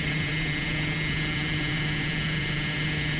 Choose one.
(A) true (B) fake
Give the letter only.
B